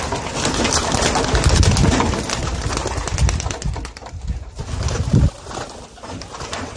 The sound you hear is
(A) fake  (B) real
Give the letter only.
B